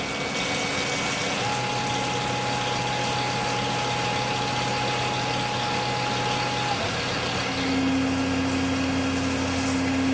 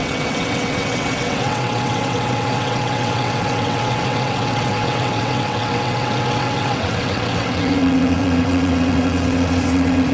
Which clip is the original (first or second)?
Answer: first